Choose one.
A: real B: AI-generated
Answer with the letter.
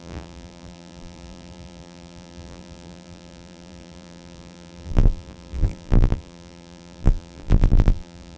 B